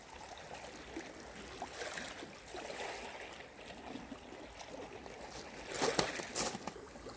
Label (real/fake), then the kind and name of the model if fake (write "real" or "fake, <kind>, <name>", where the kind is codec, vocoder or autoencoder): real